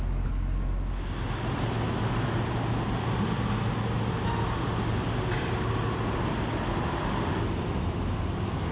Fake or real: real